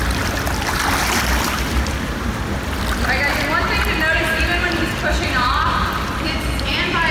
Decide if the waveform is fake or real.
real